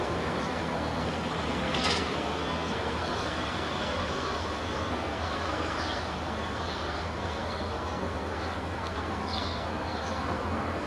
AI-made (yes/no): yes